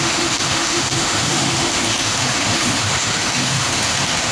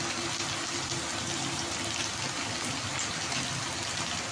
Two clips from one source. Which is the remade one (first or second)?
first